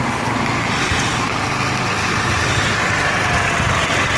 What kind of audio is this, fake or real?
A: real